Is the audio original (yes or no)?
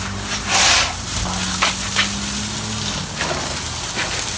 yes